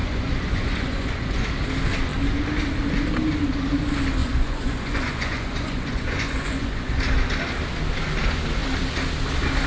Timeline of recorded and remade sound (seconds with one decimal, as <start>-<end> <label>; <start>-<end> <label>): 0.0-1.5 remade; 1.5-4.2 recorded; 4.2-7.0 remade; 7.0-9.7 recorded

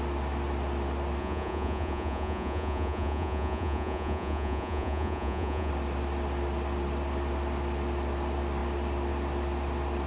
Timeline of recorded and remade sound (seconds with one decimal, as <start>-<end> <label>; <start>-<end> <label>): 0.0-1.2 recorded; 1.2-5.7 remade; 5.7-10.1 recorded